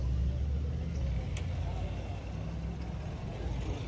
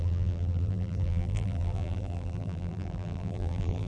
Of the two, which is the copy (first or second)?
second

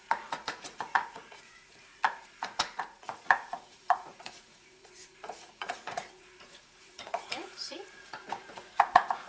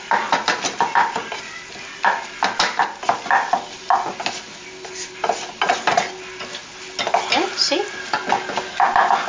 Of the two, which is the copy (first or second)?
first